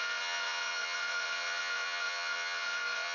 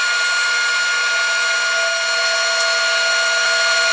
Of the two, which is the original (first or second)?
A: second